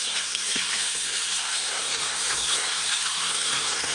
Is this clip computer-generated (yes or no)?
yes